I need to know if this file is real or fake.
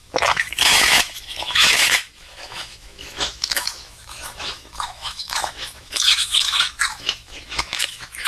fake